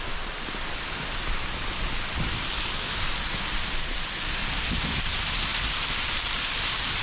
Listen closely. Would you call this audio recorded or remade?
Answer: recorded